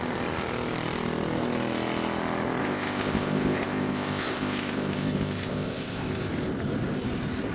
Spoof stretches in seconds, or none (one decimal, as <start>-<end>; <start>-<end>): 2.6-6.3